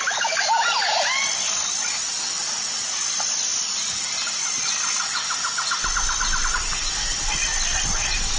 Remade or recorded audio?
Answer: recorded